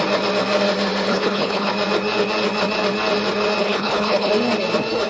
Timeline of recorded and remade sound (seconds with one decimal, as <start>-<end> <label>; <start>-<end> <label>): 0.0-1.1 recorded; 1.1-1.7 remade; 1.7-3.6 recorded; 3.6-4.3 remade; 4.3-5.1 recorded